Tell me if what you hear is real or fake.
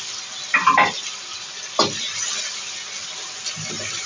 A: real